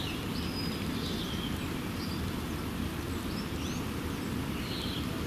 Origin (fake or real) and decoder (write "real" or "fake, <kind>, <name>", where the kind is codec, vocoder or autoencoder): real